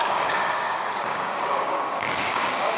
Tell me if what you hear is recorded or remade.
remade